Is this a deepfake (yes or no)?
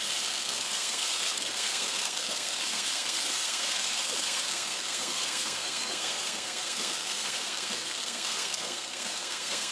yes